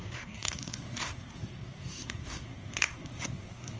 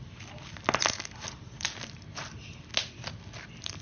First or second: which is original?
second